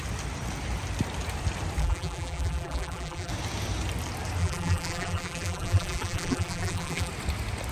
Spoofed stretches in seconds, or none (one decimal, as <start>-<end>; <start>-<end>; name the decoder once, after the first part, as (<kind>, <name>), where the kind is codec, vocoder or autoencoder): 1.8-3.3 (vocoder, BigVGAN v2); 4.4-7.1